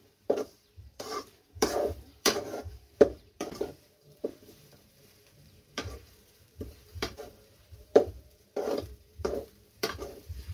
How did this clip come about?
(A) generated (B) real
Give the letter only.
A